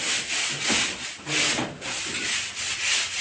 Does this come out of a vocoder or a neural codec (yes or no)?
no